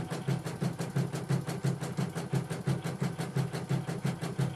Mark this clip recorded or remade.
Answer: recorded